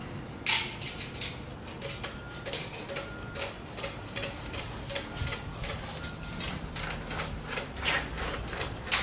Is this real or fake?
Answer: real